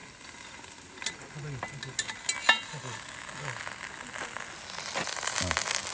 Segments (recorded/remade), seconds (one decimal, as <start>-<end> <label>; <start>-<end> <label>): 0.0-5.9 recorded